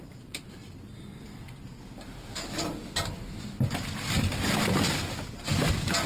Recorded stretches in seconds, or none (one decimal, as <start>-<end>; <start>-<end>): 0.0-6.1

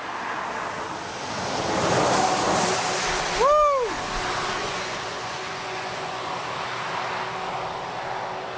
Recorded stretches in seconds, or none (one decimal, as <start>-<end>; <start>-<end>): 0.0-4.6; 6.3-8.6

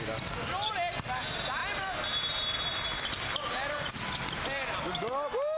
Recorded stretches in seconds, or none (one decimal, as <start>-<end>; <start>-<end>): 0.0-5.6

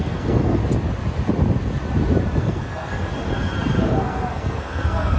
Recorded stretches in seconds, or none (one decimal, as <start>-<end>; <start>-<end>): 0.6-2.4; 3.1-3.8